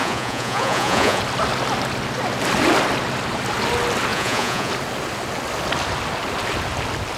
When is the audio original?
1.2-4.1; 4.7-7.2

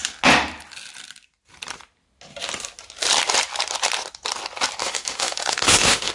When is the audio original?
0.0-4.8

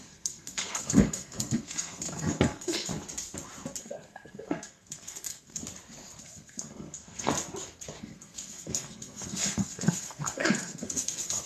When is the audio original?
2.9-3.8; 5.6-6.2; 7.3-8.0

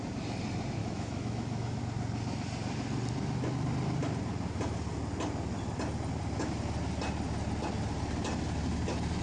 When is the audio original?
0.0-0.8; 1.8-9.2

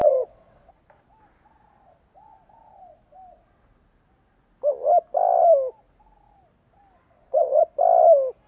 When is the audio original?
0.7-7.1; 7.6-8.5